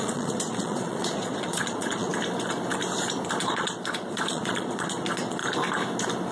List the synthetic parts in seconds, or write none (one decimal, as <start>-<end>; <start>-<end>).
0.0-2.1; 3.4-5.4